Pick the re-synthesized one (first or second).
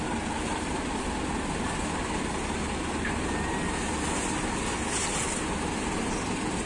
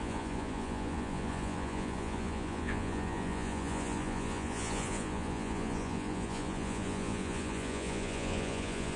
second